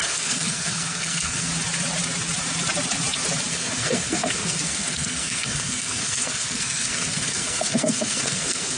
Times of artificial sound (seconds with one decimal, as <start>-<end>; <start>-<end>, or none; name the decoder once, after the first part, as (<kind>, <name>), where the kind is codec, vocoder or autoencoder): 0.0-1.5 (codec, SNAC); 3.5-8.8